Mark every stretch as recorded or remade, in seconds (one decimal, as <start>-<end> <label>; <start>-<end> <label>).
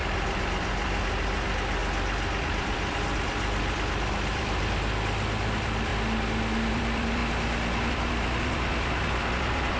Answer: 0.0-1.8 remade; 1.8-2.4 recorded; 2.4-5.9 remade; 5.9-6.7 recorded; 6.7-7.2 remade; 7.2-7.9 recorded; 7.9-9.8 remade